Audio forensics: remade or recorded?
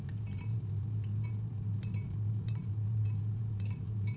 remade